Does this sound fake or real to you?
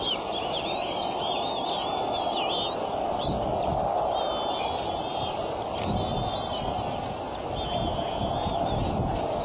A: real